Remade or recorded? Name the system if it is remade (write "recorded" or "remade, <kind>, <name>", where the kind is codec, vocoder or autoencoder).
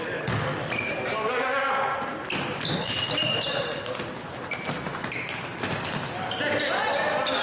recorded